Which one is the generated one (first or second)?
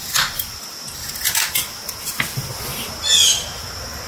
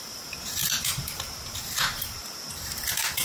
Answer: second